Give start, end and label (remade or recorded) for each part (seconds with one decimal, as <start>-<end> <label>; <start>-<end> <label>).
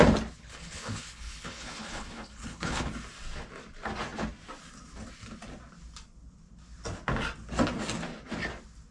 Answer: 0.0-0.4 recorded; 0.4-2.9 remade; 2.9-8.9 recorded